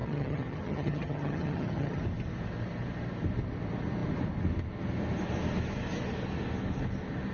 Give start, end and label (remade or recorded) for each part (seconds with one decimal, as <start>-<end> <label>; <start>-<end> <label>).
0.0-2.0 remade; 2.0-7.3 recorded